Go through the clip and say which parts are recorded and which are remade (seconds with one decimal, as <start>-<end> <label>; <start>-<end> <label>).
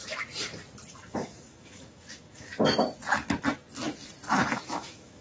0.0-0.9 recorded; 0.9-2.5 remade; 2.5-4.3 recorded; 4.3-5.2 remade